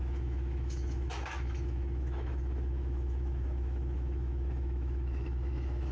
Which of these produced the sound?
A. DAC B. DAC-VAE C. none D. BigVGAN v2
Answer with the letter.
B